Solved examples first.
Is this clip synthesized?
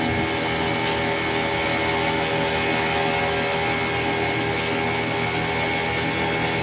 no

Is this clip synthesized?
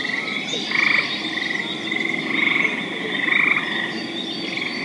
no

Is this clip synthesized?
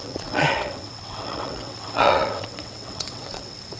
yes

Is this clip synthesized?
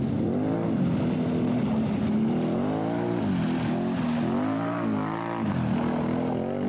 no